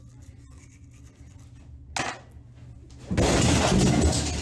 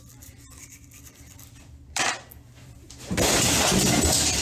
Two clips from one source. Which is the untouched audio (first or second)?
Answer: first